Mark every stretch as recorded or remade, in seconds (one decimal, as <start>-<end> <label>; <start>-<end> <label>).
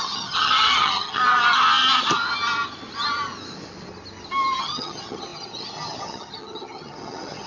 0.0-1.2 remade; 1.2-4.6 recorded; 4.6-7.5 remade